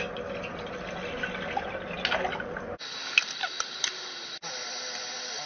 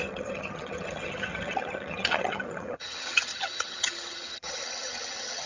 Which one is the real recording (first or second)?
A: first